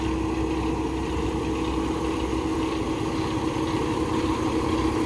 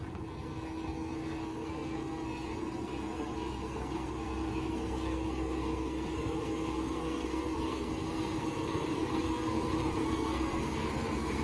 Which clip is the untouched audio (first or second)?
first